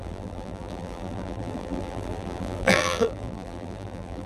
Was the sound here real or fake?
fake